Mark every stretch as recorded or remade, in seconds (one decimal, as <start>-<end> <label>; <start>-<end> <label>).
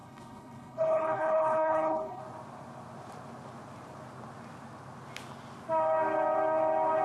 0.0-2.2 remade; 2.2-7.0 recorded